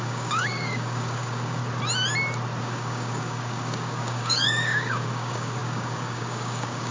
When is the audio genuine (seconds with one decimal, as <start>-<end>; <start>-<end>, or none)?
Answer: 1.6-2.6